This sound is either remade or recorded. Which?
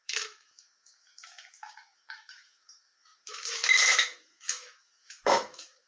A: remade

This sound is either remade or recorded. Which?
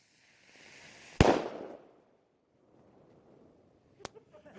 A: recorded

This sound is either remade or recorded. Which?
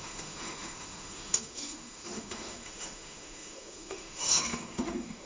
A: remade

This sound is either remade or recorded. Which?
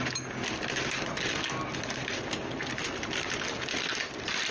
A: recorded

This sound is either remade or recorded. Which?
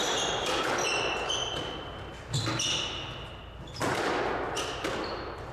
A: recorded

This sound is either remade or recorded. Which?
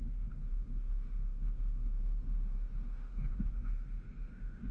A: remade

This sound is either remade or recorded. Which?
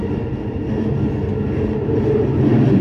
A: recorded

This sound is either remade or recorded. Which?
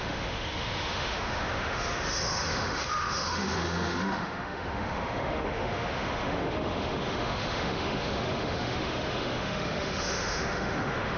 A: remade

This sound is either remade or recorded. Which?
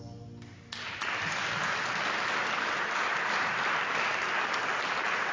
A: recorded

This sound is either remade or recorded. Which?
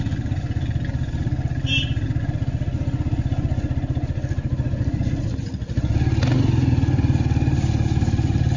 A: recorded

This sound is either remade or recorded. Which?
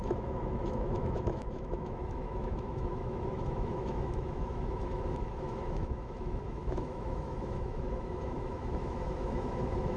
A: remade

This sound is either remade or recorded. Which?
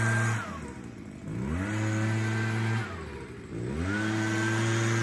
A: recorded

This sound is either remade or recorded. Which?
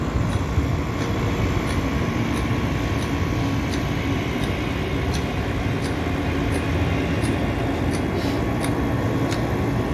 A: recorded